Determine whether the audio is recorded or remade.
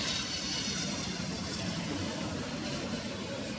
remade